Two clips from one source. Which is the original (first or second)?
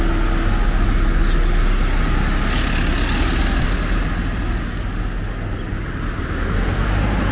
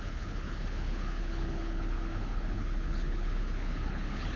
first